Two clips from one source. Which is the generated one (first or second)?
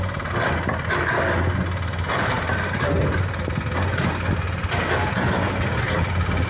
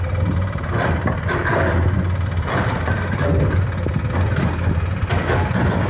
second